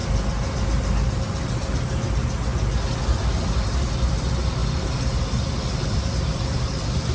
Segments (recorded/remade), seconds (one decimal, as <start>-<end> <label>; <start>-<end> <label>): 0.0-7.1 recorded